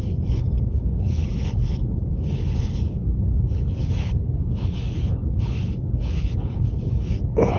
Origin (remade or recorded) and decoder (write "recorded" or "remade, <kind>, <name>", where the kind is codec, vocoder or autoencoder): remade, codec, HILCodec